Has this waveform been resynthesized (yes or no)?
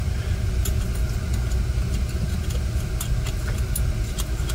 no